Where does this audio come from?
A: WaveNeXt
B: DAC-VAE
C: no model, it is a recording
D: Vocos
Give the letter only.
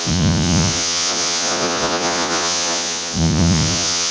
D